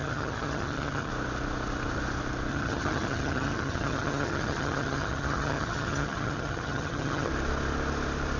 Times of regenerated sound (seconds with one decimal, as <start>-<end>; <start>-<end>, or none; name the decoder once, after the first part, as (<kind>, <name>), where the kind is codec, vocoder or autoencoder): 0.0-1.1 (vocoder, HiFi-GAN); 2.5-7.3